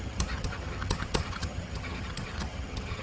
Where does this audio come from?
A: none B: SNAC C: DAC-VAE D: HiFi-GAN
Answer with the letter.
D